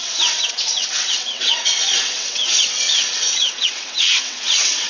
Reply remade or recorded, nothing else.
remade